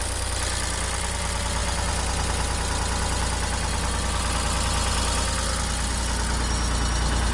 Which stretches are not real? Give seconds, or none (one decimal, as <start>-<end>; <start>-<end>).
none